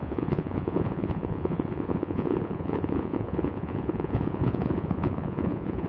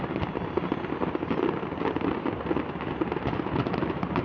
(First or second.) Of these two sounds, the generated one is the first